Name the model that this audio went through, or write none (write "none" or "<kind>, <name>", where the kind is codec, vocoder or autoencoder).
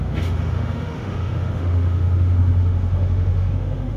autoencoder, DAC-VAE